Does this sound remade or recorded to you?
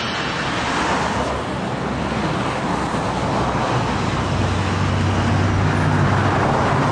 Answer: recorded